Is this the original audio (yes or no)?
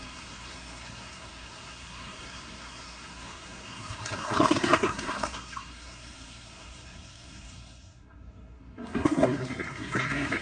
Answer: no